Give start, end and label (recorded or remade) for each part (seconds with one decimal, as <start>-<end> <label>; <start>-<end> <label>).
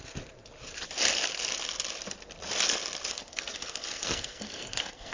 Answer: 0.0-3.1 recorded; 3.1-5.1 remade